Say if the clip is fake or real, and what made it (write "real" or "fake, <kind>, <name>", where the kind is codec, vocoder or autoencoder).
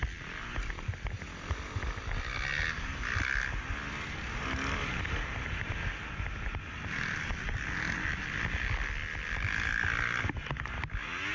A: real